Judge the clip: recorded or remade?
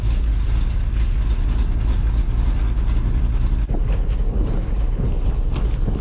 recorded